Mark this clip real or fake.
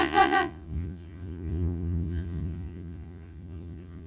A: fake